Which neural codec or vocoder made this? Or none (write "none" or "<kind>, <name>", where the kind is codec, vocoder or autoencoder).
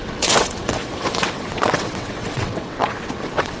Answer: vocoder, WaveNeXt